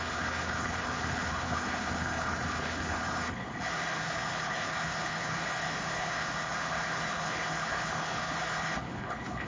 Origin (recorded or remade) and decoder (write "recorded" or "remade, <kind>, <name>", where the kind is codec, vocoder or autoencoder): remade, codec, HILCodec